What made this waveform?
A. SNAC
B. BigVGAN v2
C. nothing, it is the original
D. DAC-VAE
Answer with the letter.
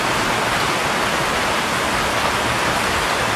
C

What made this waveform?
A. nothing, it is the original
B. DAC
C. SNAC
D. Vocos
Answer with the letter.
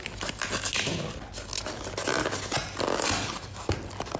A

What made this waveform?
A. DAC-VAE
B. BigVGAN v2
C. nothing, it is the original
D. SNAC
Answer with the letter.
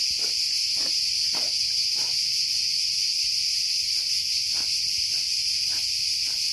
C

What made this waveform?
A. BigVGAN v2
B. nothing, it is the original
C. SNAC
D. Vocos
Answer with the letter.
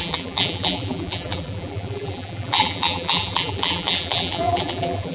A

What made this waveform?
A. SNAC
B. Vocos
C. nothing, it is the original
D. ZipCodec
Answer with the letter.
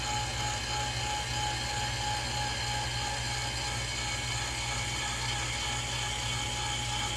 C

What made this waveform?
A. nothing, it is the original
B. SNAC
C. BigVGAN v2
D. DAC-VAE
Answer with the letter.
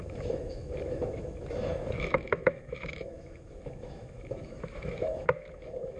D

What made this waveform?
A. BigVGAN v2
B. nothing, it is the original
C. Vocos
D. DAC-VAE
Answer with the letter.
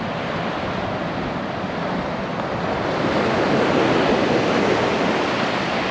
B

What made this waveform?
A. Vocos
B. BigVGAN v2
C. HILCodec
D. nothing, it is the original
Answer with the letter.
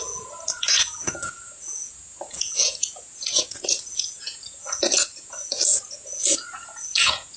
A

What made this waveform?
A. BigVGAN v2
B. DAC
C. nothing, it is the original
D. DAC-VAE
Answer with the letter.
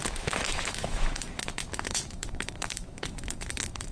D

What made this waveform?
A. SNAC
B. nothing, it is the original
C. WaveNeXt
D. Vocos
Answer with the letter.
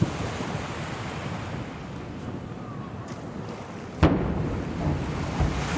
B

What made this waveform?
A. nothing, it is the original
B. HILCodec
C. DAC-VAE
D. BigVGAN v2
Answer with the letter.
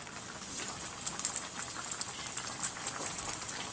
A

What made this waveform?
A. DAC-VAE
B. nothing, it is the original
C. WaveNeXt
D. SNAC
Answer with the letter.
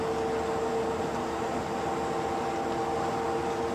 B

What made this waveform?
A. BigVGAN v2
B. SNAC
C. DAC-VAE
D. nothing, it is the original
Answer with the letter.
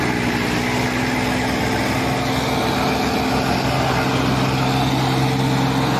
D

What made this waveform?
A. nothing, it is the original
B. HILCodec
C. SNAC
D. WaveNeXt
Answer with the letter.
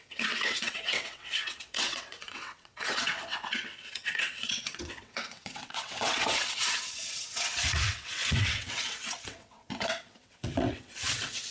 D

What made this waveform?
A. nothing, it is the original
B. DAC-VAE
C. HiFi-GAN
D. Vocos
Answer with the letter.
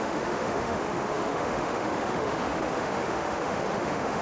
B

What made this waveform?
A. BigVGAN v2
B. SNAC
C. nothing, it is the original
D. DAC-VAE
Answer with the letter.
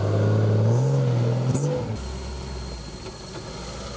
C